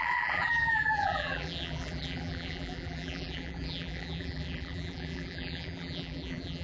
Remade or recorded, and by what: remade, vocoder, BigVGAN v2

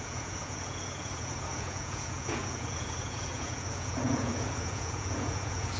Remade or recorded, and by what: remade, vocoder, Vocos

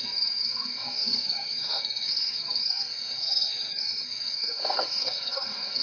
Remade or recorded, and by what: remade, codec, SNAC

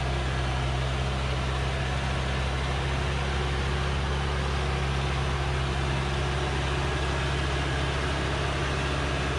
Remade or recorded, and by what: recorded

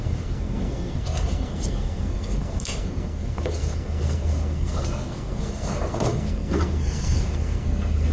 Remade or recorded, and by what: remade, codec, SNAC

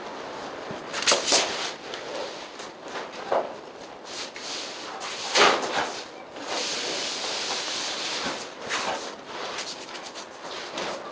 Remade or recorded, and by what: recorded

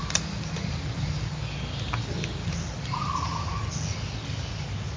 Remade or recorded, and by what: recorded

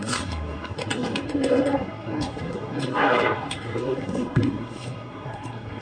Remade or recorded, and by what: remade, codec, SNAC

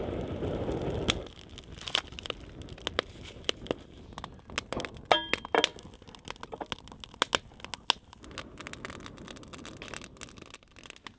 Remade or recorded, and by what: recorded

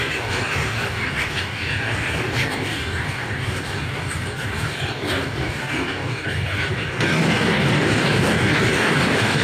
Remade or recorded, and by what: remade, codec, DAC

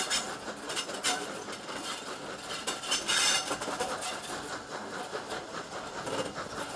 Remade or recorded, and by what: recorded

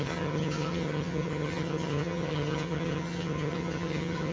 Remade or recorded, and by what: remade, vocoder, HiFi-GAN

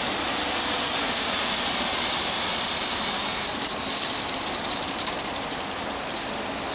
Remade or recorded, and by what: recorded